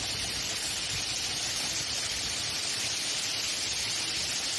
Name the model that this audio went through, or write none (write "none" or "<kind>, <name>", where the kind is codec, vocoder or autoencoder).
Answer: none